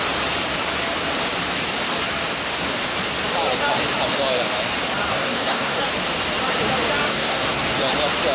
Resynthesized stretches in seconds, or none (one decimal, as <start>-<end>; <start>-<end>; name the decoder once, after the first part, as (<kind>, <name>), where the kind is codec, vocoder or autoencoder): 5.1-5.8 (codec, SNAC); 7.1-7.8